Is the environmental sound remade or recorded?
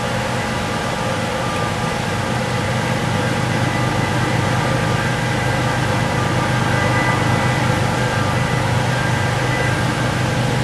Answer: recorded